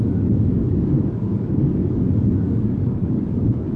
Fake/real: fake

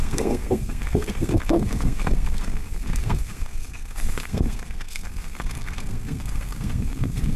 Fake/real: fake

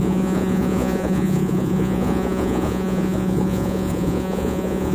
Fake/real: fake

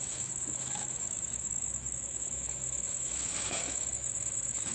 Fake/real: fake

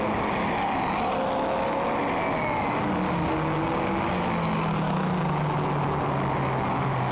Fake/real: real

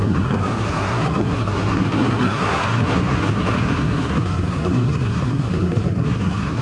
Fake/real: fake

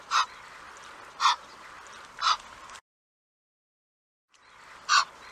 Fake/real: real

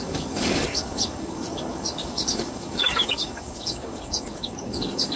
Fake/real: fake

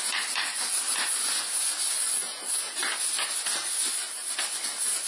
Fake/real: real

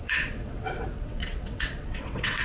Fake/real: fake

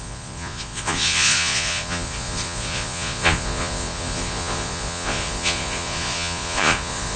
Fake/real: fake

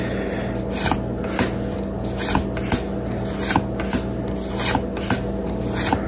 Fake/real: real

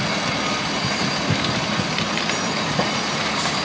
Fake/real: real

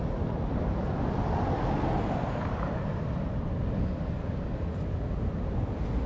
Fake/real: real